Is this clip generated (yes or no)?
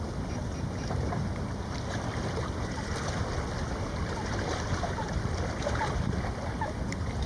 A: no